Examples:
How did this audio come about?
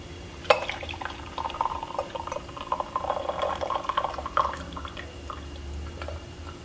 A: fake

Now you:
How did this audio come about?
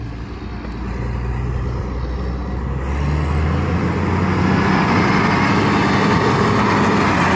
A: real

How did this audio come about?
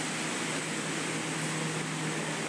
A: real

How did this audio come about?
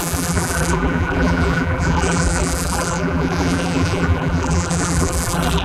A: fake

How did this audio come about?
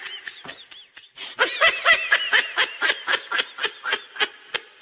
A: real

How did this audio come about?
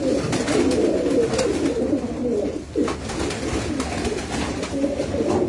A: real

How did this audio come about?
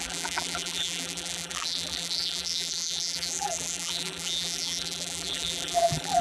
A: fake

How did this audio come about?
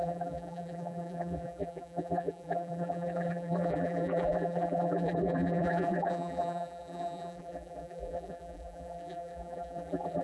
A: fake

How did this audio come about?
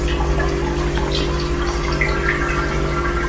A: real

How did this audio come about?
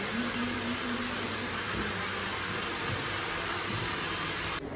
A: fake